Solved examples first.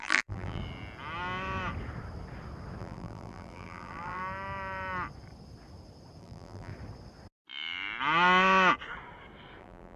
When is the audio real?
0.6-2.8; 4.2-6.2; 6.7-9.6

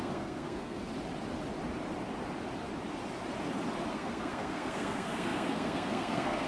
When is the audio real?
0.8-3.9

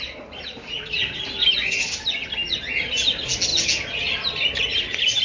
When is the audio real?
0.0-5.2

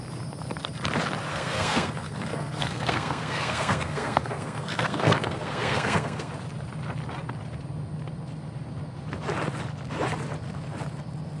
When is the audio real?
0.0-1.3; 6.3-11.4

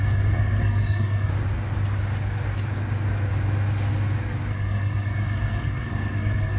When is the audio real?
1.3-4.5